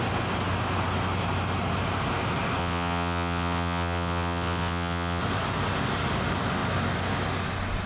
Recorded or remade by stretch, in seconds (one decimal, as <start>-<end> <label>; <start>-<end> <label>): 0.0-2.6 recorded; 2.6-5.2 remade; 5.2-7.9 recorded